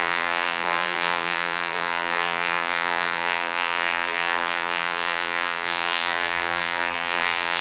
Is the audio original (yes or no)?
no